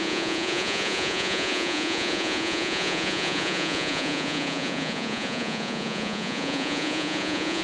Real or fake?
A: fake